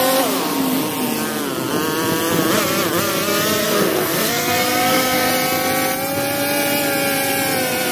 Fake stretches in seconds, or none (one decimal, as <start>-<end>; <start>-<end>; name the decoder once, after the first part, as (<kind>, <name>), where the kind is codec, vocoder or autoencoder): 3.6-5.3 (codec, SNAC)

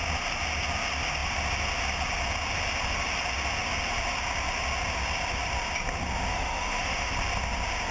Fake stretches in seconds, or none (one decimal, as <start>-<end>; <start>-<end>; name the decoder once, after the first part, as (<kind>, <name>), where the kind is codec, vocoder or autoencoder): 6.3-7.1 (autoencoder, DAC-VAE)

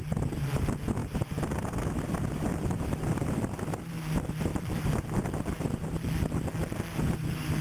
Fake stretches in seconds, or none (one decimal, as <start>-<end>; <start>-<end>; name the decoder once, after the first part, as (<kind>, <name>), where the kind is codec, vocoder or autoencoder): 1.0-2.8 (vocoder, BigVGAN v2); 4.5-5.4